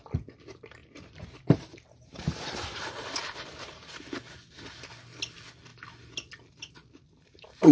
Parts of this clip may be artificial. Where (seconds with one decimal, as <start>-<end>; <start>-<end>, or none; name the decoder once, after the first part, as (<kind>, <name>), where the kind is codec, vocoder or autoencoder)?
0.8-4.0 (vocoder, BigVGAN v2)